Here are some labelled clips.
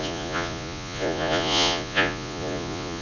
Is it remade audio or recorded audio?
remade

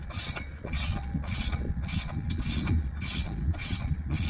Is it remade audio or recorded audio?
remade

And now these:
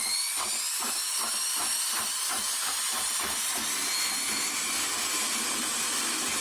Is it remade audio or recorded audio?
recorded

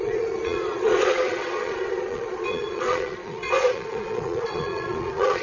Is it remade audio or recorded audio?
remade